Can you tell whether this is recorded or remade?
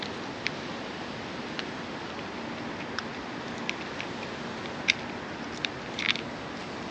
recorded